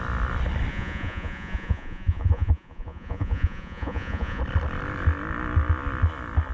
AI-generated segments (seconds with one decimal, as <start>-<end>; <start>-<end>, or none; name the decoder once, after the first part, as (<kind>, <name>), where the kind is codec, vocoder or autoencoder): 0.7-4.4 (vocoder, Vocos)